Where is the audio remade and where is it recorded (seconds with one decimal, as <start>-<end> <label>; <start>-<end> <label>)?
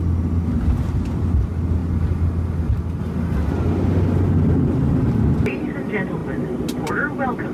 0.0-7.5 recorded